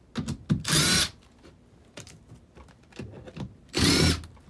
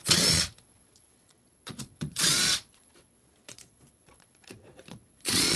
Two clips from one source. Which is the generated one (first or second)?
second